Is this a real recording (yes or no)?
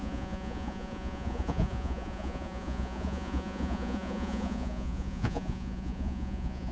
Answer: no